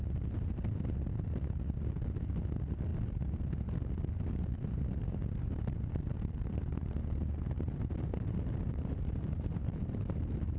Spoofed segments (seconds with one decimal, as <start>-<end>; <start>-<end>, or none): 6.7-10.6